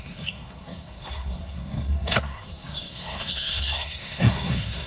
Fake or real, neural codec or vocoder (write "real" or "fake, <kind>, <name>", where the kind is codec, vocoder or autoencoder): fake, codec, SNAC